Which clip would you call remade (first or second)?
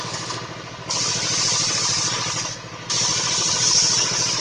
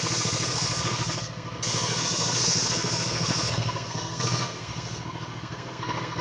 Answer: second